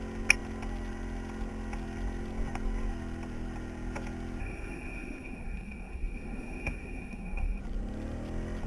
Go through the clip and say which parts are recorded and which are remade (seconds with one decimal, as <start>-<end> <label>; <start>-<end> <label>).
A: 0.0-4.4 recorded; 4.4-7.6 remade; 7.6-8.7 recorded